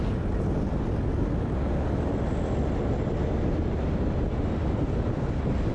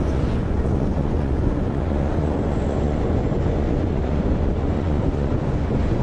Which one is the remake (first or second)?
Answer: second